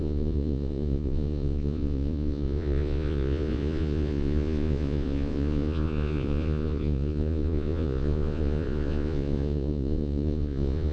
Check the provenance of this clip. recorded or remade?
remade